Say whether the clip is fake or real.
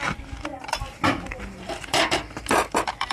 fake